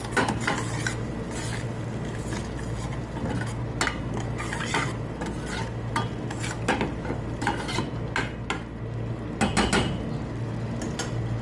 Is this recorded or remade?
recorded